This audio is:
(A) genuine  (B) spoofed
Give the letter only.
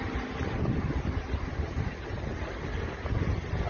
A